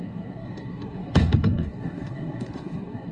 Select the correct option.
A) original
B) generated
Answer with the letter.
B